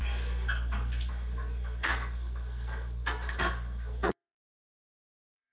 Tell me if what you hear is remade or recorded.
remade